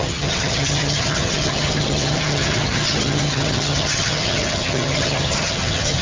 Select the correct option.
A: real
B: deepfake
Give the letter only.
B